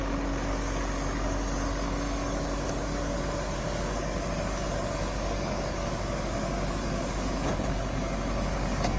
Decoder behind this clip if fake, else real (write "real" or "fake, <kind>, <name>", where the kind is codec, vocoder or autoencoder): fake, codec, DAC